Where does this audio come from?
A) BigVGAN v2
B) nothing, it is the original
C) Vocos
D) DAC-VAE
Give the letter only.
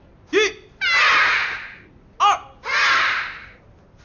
B